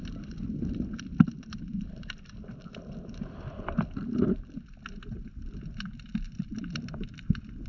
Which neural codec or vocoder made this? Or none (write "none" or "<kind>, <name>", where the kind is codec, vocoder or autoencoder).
vocoder, BigVGAN v2